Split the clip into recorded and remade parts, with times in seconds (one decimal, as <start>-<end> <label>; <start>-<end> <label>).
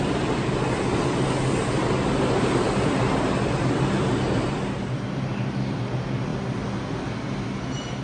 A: 0.0-8.0 recorded